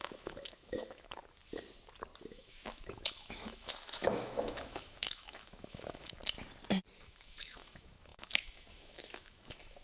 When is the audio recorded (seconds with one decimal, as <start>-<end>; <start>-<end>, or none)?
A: 1.2-2.3; 6.2-7.0